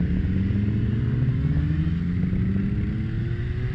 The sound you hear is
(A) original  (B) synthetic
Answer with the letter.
A